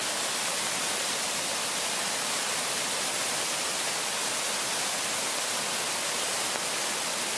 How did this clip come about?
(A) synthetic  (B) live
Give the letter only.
B